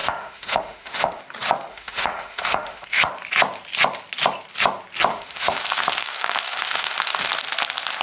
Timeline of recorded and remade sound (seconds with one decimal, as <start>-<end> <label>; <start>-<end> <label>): 0.0-1.2 remade; 1.2-1.7 recorded; 1.7-3.1 remade; 3.1-5.1 recorded; 5.1-7.3 remade; 7.3-8.0 recorded